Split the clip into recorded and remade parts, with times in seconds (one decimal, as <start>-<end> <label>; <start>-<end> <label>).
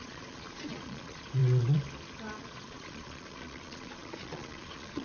0.0-1.4 remade; 1.4-2.4 recorded; 2.4-5.0 remade